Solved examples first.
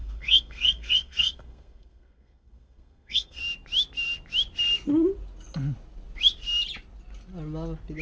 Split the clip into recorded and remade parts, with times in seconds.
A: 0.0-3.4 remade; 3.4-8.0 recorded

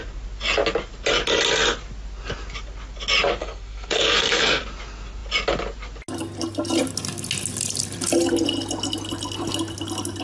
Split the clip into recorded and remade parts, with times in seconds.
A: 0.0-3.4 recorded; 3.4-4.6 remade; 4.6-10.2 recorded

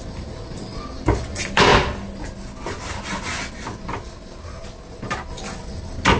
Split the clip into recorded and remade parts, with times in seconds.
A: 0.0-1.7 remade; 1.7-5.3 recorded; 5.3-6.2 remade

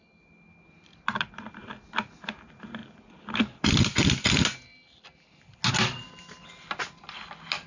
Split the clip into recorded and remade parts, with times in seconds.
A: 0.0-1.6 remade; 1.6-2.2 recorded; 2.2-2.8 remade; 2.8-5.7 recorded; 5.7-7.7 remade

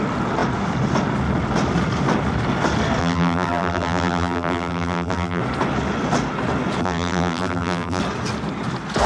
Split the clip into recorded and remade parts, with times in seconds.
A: 0.0-3.0 recorded; 3.0-5.4 remade; 5.4-6.8 recorded; 6.8-8.0 remade; 8.0-9.1 recorded

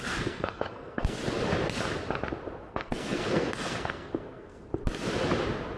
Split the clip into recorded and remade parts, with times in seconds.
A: 0.0-1.2 remade; 1.2-2.7 recorded; 2.7-4.7 remade; 4.7-5.8 recorded

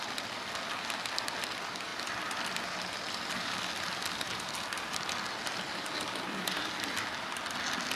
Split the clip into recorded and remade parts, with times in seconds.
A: 0.0-8.0 recorded

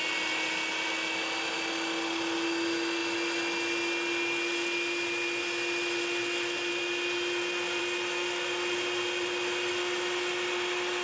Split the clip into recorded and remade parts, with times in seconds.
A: 0.0-11.0 recorded